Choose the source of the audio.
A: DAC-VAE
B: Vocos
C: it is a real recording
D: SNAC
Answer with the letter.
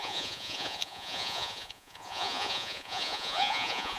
B